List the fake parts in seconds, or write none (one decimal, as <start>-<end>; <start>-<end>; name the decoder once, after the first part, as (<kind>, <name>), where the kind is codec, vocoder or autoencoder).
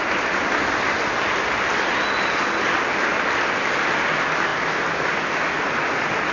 none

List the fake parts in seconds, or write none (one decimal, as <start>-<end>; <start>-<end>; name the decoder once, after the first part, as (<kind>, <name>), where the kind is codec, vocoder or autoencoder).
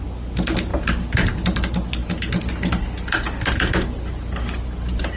none